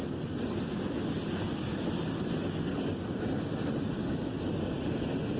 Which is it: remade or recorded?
recorded